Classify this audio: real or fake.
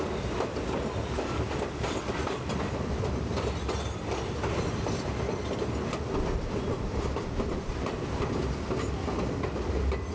real